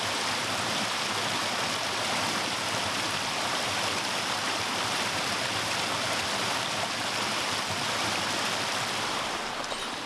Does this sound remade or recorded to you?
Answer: remade